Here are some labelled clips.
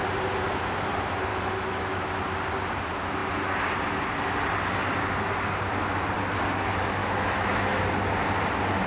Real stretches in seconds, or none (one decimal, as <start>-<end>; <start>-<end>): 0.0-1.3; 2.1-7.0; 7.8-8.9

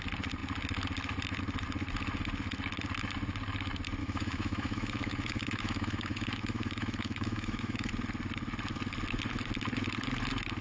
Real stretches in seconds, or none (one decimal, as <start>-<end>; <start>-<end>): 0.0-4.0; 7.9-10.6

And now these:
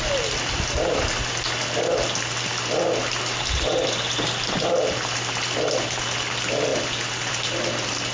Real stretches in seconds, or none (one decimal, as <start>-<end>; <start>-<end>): 0.0-8.1